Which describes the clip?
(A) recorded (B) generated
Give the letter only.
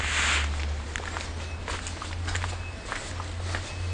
A